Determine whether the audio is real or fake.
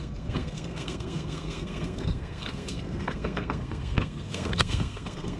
fake